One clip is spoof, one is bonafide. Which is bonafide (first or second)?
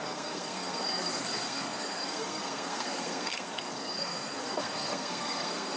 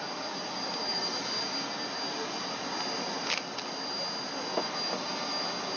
second